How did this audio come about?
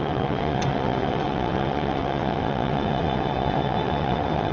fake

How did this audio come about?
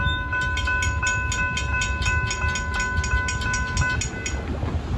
real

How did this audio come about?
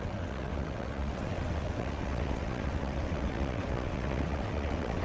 fake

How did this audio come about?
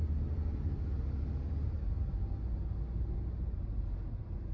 real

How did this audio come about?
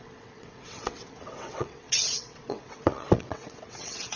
fake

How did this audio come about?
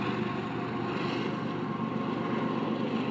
real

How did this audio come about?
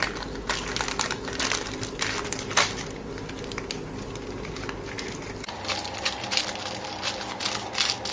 real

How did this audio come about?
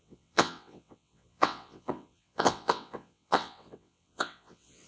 fake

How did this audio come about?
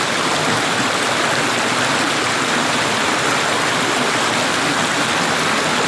real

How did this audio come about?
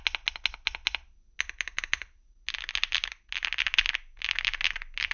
real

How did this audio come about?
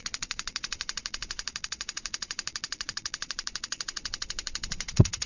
fake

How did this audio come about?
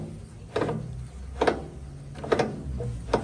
real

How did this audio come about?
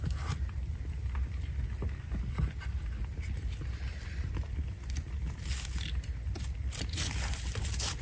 real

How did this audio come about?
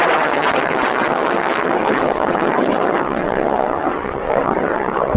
fake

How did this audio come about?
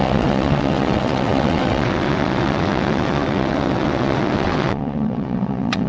fake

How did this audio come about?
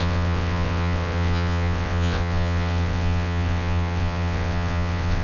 fake